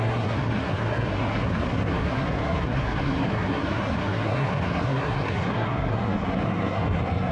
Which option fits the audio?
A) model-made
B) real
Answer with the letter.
A